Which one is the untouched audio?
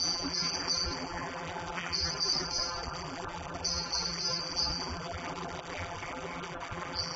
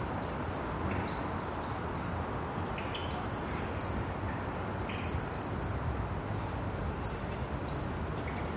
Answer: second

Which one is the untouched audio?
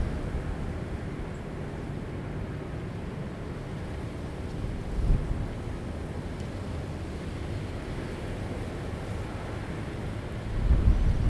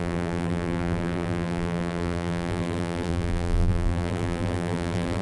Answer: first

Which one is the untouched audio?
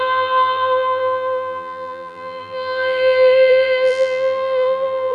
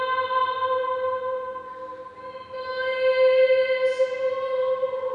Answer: second